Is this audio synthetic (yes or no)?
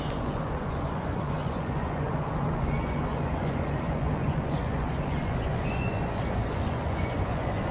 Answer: yes